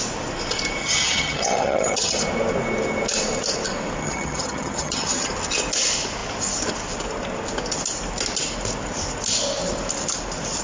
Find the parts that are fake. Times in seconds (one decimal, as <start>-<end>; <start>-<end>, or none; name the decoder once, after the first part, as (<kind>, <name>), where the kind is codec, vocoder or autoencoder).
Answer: 0.8-2.2 (vocoder, HiFi-GAN); 4.0-5.3